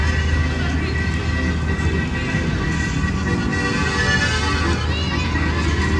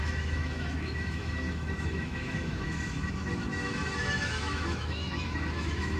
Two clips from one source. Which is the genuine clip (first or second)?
first